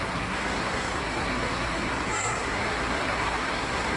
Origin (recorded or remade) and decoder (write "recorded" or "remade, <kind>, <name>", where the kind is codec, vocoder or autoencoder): remade, codec, SNAC